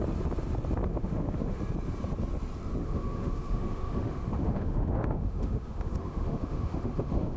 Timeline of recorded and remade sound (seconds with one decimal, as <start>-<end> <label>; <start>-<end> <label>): 0.0-0.9 recorded; 0.9-1.6 remade; 1.6-2.8 recorded; 2.8-7.4 remade